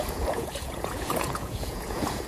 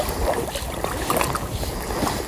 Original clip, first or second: second